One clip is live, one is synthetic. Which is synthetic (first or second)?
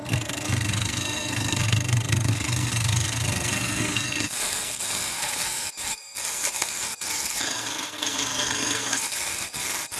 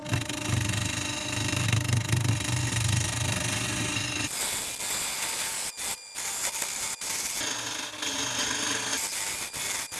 first